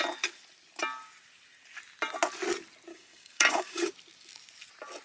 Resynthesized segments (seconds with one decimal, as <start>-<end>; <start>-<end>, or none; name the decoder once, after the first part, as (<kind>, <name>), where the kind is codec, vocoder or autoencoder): 2.9-3.9 (codec, DAC)